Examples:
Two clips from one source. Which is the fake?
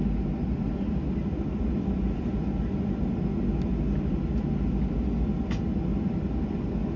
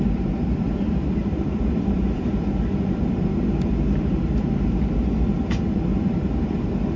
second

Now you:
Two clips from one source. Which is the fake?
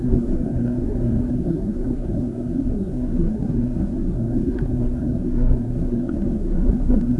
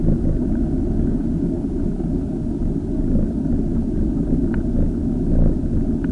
first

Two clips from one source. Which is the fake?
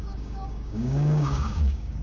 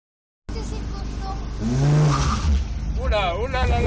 first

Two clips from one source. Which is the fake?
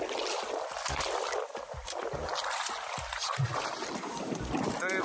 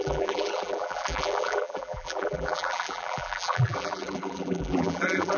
second